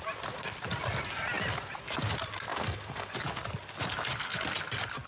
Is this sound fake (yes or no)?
no